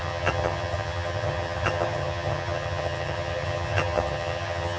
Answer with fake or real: fake